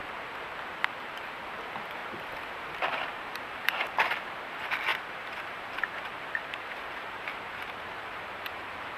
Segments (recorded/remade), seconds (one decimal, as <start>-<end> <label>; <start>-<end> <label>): 0.0-0.7 recorded; 0.7-9.0 remade